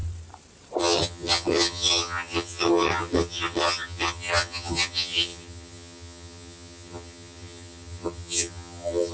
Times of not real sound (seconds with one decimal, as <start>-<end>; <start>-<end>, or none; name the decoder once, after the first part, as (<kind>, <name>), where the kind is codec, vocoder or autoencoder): 0.8-9.1 (vocoder, HiFi-GAN)